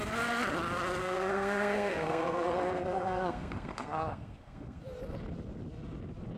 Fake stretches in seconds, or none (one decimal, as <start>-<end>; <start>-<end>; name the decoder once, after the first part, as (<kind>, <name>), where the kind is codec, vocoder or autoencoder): 1.0-4.8 (codec, SNAC)